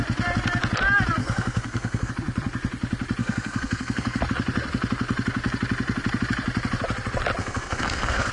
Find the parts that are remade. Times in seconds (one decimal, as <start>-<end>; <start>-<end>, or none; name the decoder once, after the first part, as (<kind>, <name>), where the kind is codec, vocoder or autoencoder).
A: 1.2-2.1 (codec, SNAC); 3.2-4.2; 7.4-8.3